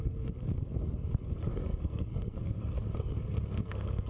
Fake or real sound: fake